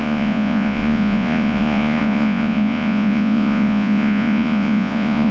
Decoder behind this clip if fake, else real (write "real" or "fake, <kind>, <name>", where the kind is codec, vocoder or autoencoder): fake, vocoder, Vocos